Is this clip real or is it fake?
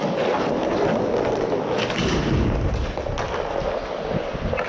real